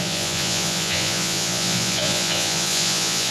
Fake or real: fake